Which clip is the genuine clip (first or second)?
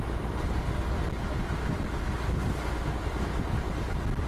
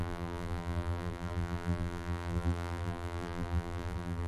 first